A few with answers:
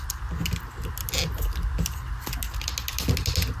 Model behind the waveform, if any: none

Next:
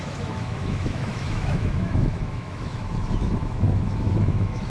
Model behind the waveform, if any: autoencoder, DAC-VAE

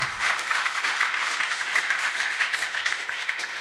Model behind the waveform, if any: autoencoder, DAC-VAE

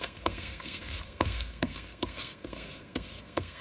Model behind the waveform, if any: codec, SNAC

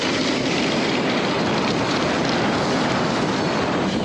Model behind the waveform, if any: none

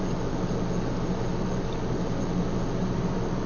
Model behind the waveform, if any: none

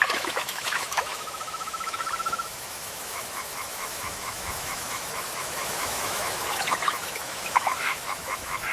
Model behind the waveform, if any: autoencoder, DAC-VAE